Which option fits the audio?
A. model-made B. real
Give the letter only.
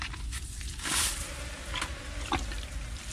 B